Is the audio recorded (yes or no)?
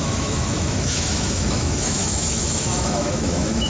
no